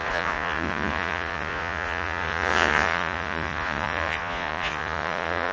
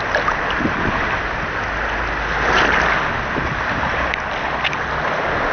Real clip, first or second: second